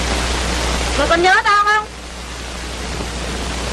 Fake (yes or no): no